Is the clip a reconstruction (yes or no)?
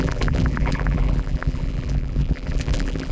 yes